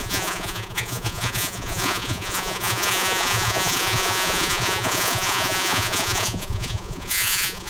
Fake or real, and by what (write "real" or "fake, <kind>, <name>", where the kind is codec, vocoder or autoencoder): fake, vocoder, Vocos